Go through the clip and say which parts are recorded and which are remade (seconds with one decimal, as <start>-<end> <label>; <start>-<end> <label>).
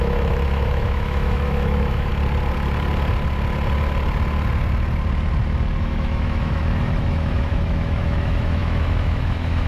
0.0-2.1 remade; 2.1-5.8 recorded; 5.8-9.7 remade